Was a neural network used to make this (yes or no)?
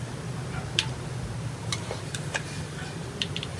yes